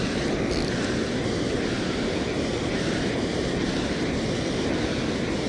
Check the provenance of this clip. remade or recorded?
recorded